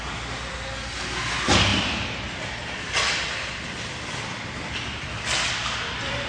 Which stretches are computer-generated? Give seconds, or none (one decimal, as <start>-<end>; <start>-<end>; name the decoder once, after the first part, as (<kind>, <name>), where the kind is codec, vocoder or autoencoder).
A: none